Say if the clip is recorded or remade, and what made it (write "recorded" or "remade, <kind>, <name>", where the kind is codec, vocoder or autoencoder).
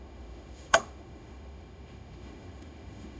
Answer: remade, autoencoder, DAC-VAE